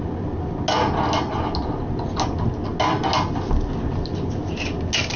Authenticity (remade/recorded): recorded